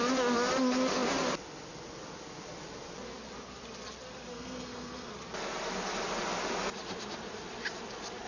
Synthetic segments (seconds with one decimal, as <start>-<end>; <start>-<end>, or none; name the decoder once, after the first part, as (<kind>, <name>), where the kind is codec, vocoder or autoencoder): 4.3-5.1 (codec, SNAC)